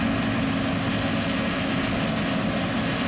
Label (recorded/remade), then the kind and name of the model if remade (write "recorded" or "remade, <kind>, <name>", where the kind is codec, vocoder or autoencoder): recorded